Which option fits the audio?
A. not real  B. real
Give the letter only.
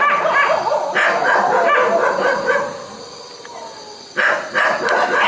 B